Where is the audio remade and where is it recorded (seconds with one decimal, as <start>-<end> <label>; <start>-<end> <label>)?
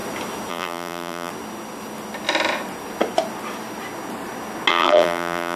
0.0-0.5 recorded; 0.5-1.3 remade; 1.3-4.7 recorded; 4.7-5.6 remade